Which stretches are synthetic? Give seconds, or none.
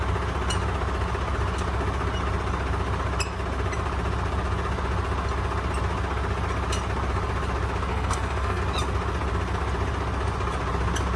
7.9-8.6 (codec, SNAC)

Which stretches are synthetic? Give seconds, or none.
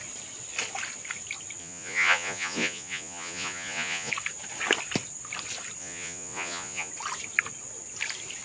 1.6-4.1 (vocoder, Vocos); 5.8-6.9